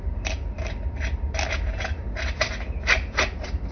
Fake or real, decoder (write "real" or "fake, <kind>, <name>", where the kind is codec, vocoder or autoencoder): real